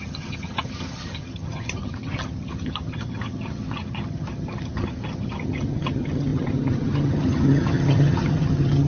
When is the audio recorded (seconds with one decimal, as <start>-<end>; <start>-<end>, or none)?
none